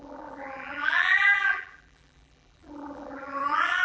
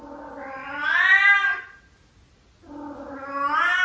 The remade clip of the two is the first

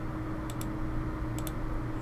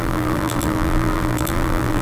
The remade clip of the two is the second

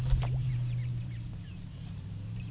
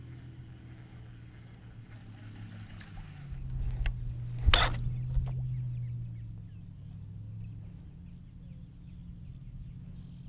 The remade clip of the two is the first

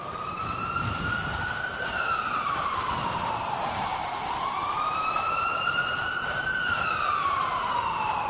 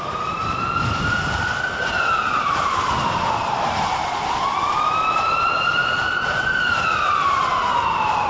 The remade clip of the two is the first